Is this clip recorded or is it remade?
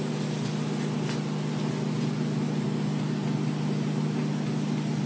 recorded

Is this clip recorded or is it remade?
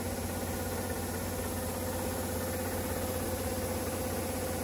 recorded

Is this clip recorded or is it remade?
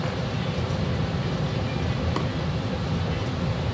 remade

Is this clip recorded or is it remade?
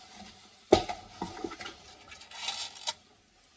recorded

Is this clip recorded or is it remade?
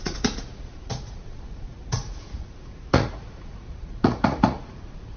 remade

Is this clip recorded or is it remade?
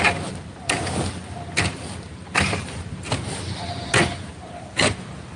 recorded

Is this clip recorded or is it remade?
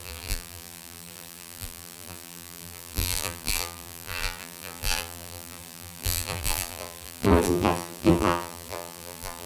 remade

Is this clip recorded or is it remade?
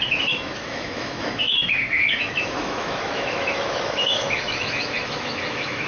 remade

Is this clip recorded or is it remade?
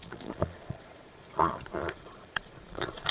remade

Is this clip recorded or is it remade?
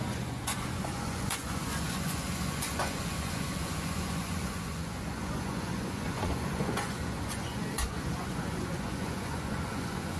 remade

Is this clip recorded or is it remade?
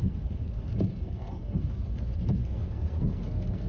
remade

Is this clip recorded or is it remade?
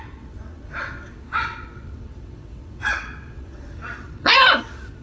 remade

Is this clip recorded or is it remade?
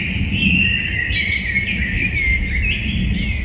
recorded